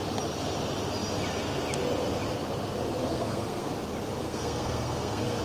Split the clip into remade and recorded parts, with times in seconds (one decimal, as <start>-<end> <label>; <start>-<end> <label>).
0.0-3.0 recorded; 3.0-3.7 remade; 3.7-4.2 recorded; 4.2-5.4 remade